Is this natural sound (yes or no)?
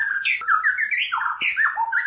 yes